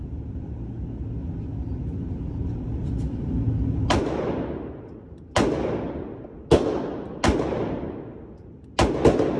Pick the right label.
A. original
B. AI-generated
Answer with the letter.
A